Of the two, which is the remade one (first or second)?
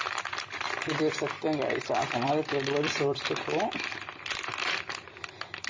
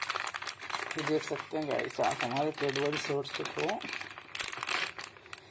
first